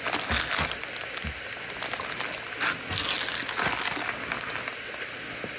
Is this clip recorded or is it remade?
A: recorded